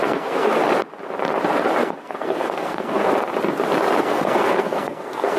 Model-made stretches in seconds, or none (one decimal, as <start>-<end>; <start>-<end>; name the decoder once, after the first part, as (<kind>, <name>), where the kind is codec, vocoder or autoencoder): 0.0-0.6 (codec, SNAC); 1.8-3.0; 4.0-5.4